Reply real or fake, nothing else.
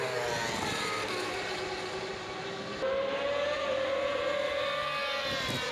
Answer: real